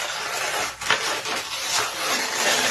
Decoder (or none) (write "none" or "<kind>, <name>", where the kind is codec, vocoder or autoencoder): none